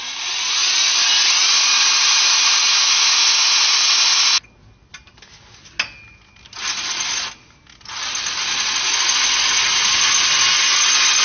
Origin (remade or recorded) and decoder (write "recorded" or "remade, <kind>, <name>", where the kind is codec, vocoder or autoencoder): recorded